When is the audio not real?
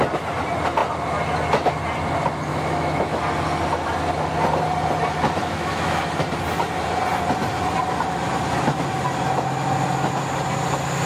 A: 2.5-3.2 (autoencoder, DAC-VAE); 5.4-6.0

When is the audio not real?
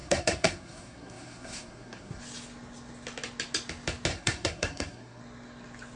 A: 0.0-2.2 (codec, SNAC); 4.1-5.2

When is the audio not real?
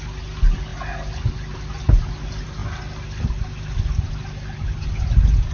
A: none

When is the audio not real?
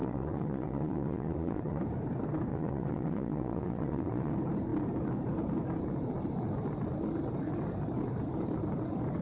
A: 0.0-1.8 (vocoder, Vocos); 2.5-4.3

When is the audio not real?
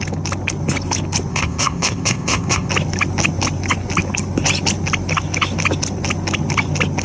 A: 1.3-2.7 (codec, ZipCodec)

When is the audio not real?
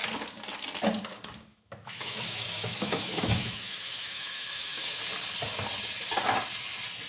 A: 1.5-5.0 (autoencoder, DAC-VAE)